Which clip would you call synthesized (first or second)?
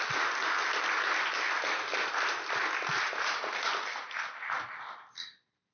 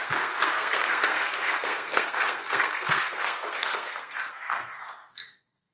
second